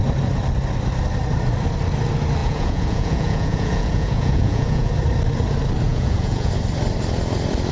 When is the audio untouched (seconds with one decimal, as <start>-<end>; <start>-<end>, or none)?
0.0-2.4; 4.9-5.9; 6.5-7.7